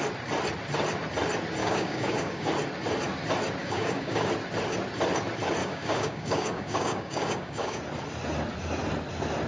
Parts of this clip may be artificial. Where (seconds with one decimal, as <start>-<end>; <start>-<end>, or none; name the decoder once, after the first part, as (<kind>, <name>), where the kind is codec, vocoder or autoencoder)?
1.6-2.5 (codec, DAC); 3.6-4.3; 5.6-7.8

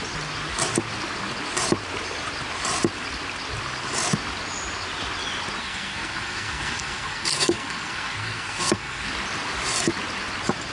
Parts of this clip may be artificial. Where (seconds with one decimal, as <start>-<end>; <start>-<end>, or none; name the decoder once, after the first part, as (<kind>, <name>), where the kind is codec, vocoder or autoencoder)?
5.6-9.1 (codec, SNAC)

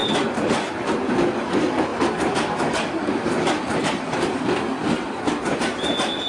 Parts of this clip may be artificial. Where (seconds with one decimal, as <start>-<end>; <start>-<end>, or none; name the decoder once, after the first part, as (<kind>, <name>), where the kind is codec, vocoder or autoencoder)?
0.0-0.7 (vocoder, BigVGAN v2); 1.9-4.4

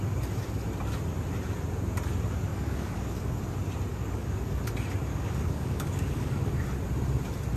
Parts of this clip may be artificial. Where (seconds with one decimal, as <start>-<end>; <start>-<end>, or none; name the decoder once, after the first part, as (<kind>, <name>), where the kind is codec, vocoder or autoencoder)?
2.5-3.4 (codec, DAC); 3.9-4.6; 5.1-6.5